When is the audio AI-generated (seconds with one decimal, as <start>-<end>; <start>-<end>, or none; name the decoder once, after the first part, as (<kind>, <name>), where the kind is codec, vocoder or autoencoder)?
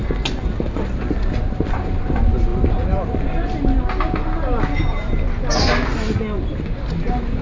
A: none